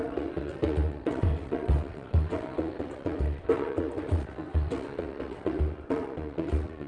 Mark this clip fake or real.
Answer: fake